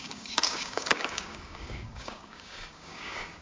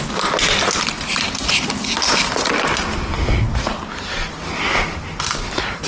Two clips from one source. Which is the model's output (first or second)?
first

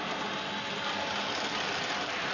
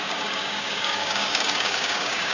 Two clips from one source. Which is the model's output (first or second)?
second